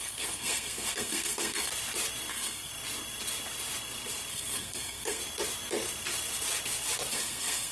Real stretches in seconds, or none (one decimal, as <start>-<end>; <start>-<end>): 1.7-2.3; 2.7-4.3; 5.2-7.1